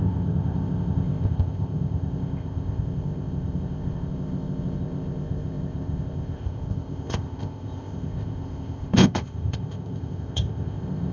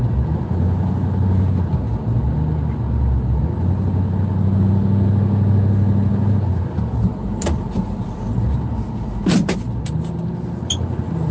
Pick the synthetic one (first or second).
first